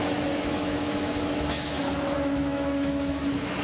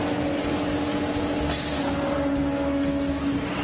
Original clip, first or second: second